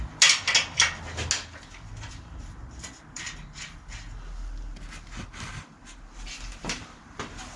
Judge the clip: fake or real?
real